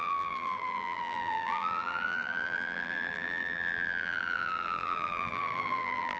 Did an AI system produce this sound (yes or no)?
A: yes